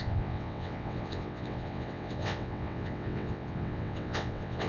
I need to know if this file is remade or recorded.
remade